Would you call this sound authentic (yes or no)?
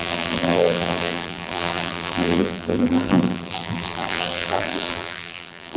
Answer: no